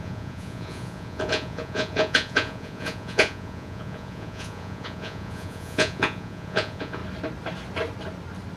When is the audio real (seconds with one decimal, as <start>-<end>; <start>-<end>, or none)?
7.0-8.6